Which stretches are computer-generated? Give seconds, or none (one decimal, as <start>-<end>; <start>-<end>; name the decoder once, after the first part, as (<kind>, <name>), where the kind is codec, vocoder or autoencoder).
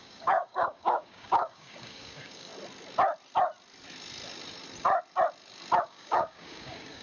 0.0-2.5 (codec, DAC); 5.8-7.0